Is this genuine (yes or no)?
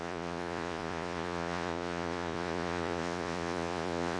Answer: no